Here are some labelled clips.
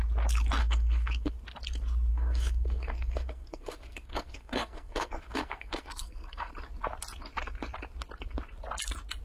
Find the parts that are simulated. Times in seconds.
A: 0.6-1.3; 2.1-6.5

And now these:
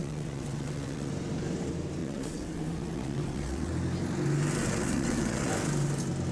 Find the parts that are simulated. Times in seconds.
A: 0.0-1.1; 2.0-3.7; 4.6-5.5

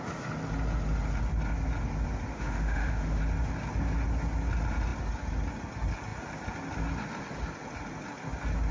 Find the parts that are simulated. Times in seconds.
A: 2.3-3.2

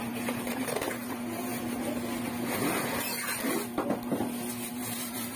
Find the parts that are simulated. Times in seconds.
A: 0.0-1.5; 4.7-5.4

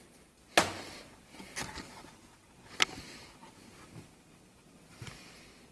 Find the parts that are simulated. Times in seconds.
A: none

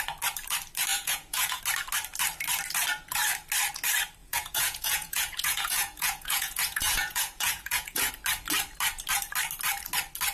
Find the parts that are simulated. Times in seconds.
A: 0.9-1.6; 4.2-8.1

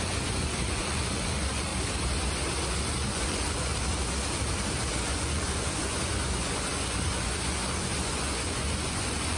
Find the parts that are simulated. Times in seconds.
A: 0.0-1.7; 2.8-3.7; 4.9-9.4